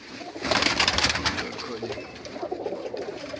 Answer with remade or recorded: remade